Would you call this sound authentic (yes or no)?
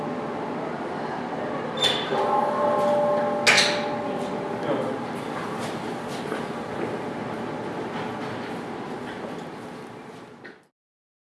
yes